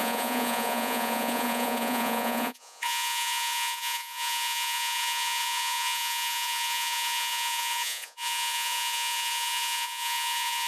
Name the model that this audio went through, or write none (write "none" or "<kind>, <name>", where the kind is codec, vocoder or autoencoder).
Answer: vocoder, Vocos